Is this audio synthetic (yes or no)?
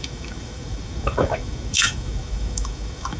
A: yes